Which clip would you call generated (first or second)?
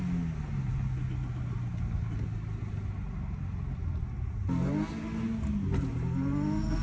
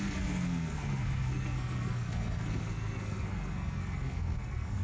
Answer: second